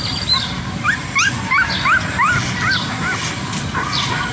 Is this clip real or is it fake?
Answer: real